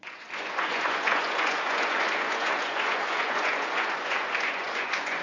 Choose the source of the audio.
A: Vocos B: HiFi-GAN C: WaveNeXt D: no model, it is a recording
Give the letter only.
A